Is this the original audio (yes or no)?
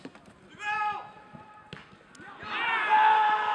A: yes